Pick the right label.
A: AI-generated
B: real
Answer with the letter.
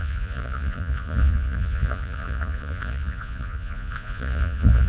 A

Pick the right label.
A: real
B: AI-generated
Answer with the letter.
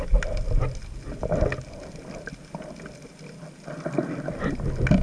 A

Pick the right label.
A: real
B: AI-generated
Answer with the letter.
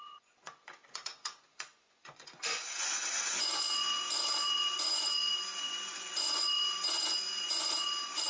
B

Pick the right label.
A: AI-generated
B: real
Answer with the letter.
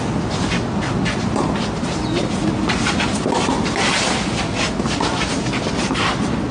B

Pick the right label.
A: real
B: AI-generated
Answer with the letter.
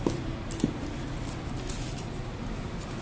A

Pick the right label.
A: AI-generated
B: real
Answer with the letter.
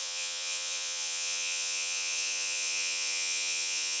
A